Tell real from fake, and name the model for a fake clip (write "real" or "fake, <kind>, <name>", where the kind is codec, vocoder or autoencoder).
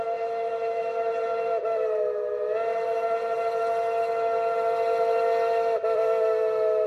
real